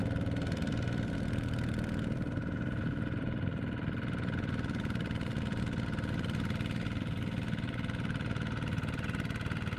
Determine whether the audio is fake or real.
real